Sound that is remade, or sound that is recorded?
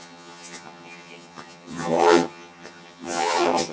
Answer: remade